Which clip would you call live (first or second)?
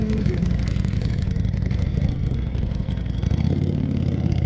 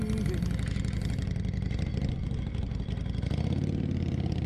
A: second